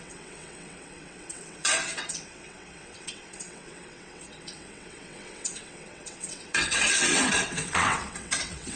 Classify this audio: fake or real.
fake